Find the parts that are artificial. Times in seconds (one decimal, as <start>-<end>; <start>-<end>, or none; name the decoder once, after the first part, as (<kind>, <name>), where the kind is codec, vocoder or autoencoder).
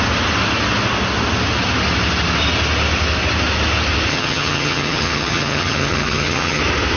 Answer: 4.1-6.6 (vocoder, HiFi-GAN)